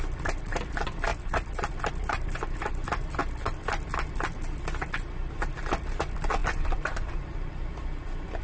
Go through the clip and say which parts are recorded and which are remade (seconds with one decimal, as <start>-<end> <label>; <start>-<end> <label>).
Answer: 0.0-3.2 remade; 3.2-5.7 recorded; 5.7-8.4 remade